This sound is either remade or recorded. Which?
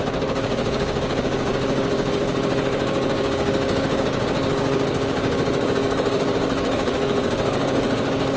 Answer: remade